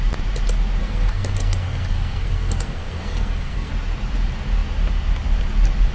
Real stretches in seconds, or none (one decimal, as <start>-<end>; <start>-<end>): 0.0-0.8; 3.7-5.9